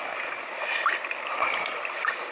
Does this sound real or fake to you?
real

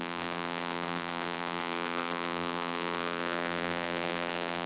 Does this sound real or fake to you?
fake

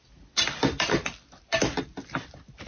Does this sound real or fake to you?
real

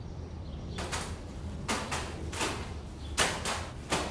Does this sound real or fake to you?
real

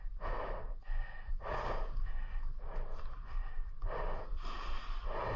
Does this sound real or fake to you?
real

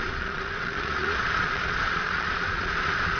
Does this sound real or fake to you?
fake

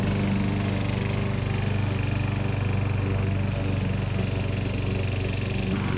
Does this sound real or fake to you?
real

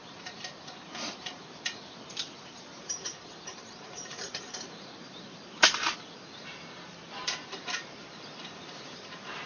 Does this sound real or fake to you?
fake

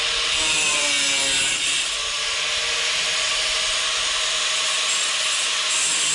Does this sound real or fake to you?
real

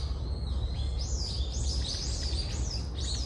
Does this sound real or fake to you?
real